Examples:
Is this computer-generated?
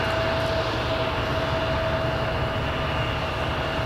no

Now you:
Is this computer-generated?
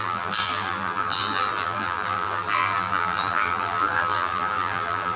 yes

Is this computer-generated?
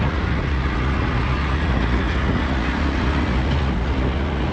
yes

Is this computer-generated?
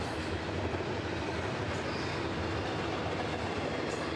no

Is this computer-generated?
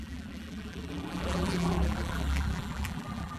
yes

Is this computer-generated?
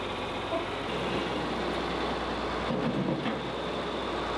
no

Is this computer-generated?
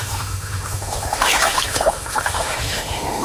yes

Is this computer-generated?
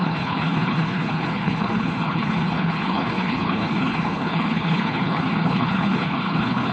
yes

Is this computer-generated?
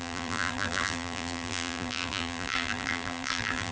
yes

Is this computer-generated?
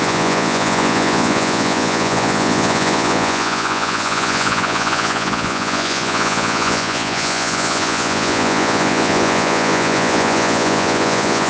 yes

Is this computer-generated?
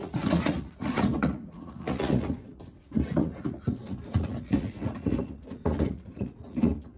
yes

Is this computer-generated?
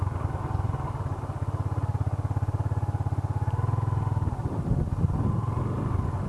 no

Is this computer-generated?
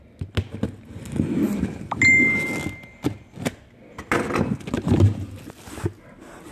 no